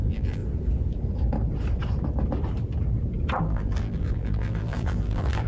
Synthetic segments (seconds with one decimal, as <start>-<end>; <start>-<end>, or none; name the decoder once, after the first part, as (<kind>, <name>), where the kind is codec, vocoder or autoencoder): 0.0-0.4 (vocoder, BigVGAN v2); 3.4-5.5